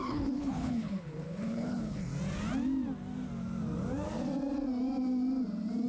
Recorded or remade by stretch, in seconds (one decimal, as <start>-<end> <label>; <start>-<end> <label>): 0.0-2.1 remade; 2.1-5.9 recorded